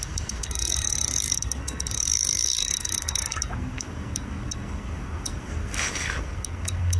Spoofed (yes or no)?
yes